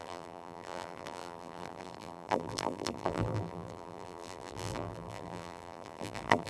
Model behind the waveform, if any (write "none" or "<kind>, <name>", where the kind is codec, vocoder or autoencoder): vocoder, BigVGAN v2